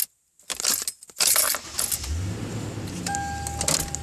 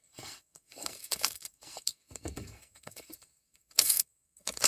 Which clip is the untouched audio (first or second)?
first